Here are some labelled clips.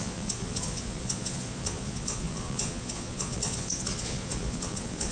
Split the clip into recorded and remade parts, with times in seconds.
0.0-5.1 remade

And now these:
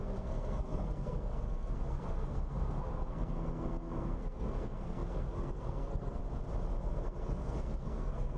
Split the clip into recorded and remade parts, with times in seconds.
0.0-6.2 remade; 6.2-6.8 recorded; 6.8-8.4 remade

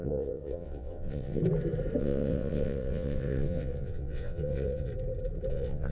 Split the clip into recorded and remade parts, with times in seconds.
0.0-1.4 remade; 1.4-2.0 recorded; 2.0-4.9 remade; 4.9-5.5 recorded; 5.5-5.9 remade

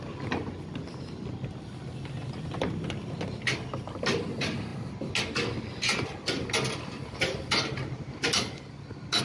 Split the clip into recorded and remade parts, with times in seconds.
0.0-9.2 recorded

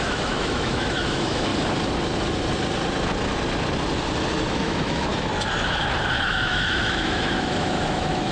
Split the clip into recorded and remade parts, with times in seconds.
0.0-1.5 remade; 1.5-4.5 recorded; 4.5-5.1 remade; 5.1-6.3 recorded; 6.3-8.3 remade

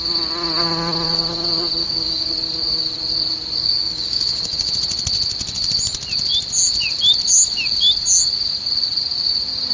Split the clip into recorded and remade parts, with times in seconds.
0.0-1.8 recorded; 1.8-2.3 remade; 2.3-3.6 recorded; 3.6-4.7 remade; 4.7-9.7 recorded

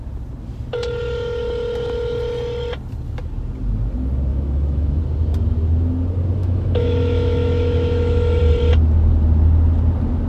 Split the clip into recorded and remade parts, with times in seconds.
0.0-4.3 recorded; 4.3-5.0 remade; 5.0-6.4 recorded; 6.4-8.4 remade; 8.4-10.3 recorded

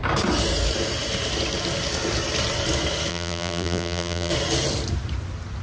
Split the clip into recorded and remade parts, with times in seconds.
0.0-3.1 recorded; 3.1-4.3 remade; 4.3-5.6 recorded